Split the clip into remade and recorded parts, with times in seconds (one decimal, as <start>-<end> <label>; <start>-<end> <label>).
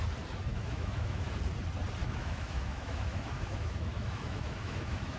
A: 0.0-0.5 recorded; 0.5-1.3 remade; 1.3-2.0 recorded; 2.0-5.2 remade